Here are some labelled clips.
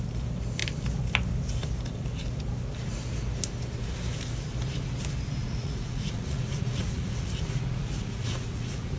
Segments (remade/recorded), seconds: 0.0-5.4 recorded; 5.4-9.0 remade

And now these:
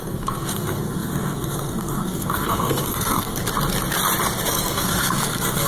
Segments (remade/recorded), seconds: 0.0-3.4 remade; 3.4-4.5 recorded; 4.5-5.7 remade

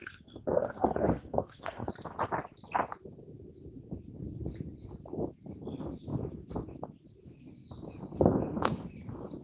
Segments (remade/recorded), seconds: 0.0-1.9 remade; 1.9-9.4 recorded

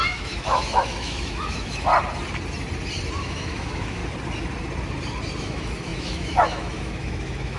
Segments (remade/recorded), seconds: 0.0-1.9 remade; 1.9-3.2 recorded; 3.2-4.0 remade; 4.0-5.4 recorded; 5.4-7.6 remade

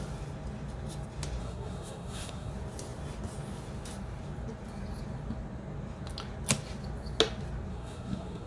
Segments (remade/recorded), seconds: 0.0-1.4 recorded; 1.4-2.5 remade; 2.5-7.7 recorded; 7.7-8.5 remade

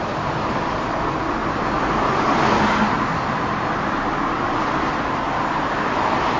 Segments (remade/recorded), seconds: 0.0-6.4 recorded

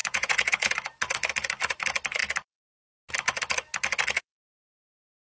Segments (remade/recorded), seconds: 0.0-0.7 remade; 0.7-5.3 recorded